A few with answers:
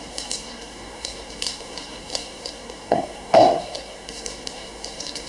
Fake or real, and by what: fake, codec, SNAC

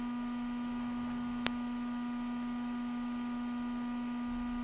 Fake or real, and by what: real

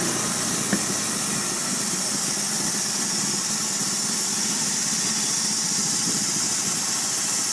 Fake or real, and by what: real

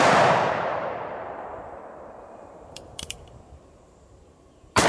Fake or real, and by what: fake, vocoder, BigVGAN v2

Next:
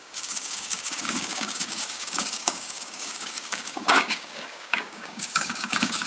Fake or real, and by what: fake, codec, DAC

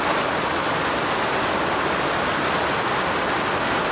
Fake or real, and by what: real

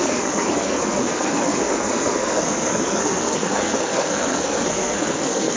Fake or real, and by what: fake, codec, SNAC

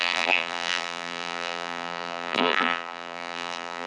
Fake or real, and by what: fake, vocoder, BigVGAN v2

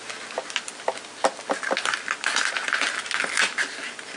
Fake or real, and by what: real